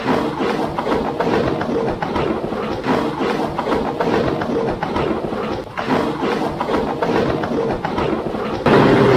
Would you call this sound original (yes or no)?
yes